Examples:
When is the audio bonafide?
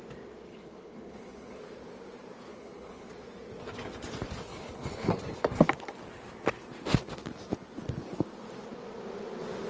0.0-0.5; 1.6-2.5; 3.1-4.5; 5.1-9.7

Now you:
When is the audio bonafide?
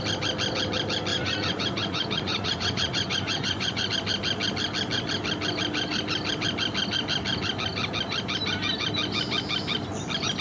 0.0-1.1; 3.9-10.4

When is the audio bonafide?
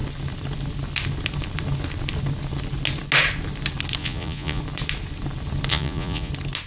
0.0-4.0; 4.6-5.7; 6.3-6.7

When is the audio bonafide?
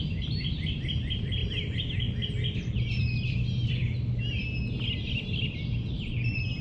1.4-3.0; 3.8-6.6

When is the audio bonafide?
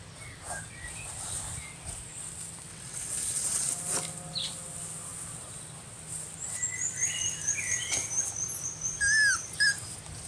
0.0-2.7; 3.7-10.3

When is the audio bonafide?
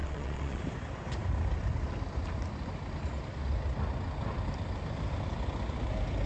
0.6-6.3